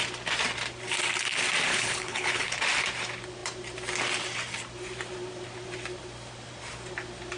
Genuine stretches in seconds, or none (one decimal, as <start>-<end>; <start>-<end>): 0.0-1.7; 2.6-7.4